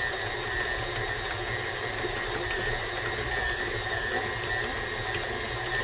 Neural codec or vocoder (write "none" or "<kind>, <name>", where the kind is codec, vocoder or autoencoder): none